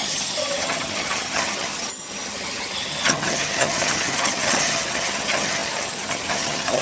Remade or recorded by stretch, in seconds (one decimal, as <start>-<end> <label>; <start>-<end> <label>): 0.0-6.8 remade